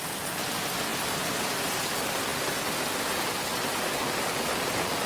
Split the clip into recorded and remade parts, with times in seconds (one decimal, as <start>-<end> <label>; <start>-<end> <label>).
0.0-5.1 recorded